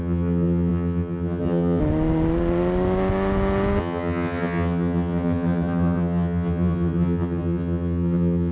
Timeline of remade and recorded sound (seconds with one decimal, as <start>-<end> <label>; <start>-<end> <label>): 0.0-1.8 remade; 1.8-3.8 recorded; 3.8-8.5 remade